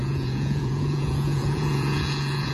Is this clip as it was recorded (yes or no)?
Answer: no